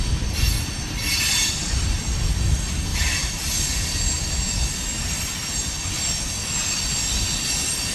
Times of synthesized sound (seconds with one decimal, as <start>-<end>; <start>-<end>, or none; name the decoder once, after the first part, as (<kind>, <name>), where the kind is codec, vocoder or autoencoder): none